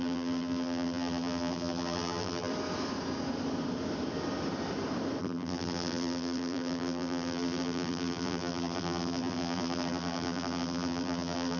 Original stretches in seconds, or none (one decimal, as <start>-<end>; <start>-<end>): 2.5-5.2

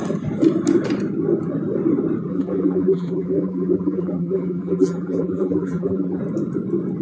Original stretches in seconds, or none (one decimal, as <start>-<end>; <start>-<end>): 0.0-2.3; 6.2-7.0

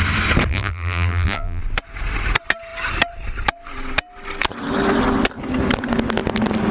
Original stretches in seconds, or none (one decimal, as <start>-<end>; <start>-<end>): 0.0-0.5; 1.6-6.7

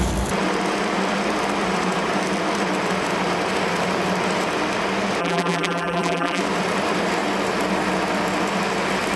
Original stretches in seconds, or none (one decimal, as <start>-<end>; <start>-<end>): 0.0-5.2; 6.4-9.2

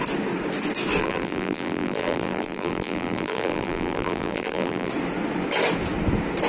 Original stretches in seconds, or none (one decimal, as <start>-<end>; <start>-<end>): 0.0-1.0; 4.9-6.5

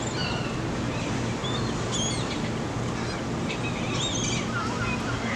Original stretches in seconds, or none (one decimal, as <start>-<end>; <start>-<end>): 0.0-5.4

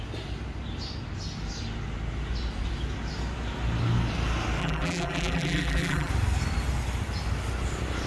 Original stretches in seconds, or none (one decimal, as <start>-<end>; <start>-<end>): 0.0-4.6; 6.1-8.1